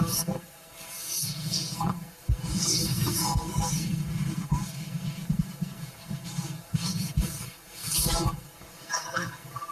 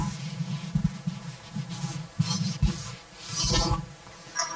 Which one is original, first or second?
second